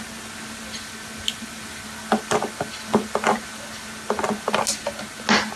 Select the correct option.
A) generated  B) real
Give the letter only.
B